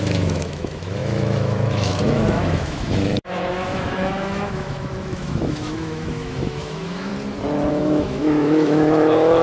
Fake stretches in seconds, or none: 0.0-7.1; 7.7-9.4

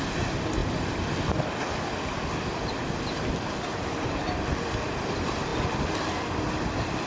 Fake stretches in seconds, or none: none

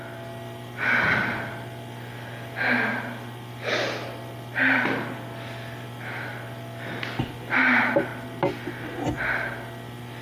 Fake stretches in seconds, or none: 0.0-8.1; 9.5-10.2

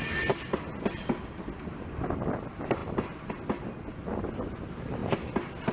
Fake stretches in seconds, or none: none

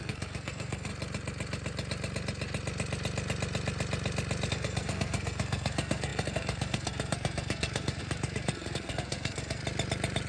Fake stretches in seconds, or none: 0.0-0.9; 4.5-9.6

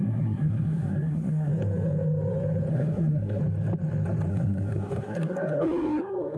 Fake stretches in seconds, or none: 0.0-1.5; 2.7-3.4; 4.3-6.4

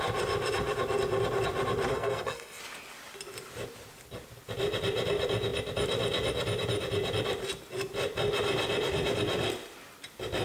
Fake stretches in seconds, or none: 1.9-2.6